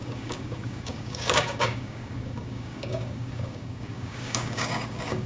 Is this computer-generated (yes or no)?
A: yes